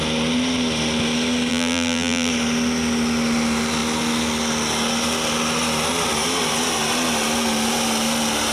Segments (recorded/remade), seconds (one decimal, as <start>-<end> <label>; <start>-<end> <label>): 0.0-1.5 recorded; 1.5-2.3 remade; 2.3-8.5 recorded